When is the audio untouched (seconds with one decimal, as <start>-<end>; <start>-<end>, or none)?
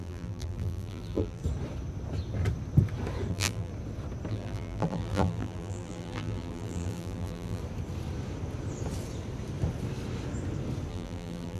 1.4-3.3; 3.7-4.3; 7.6-10.9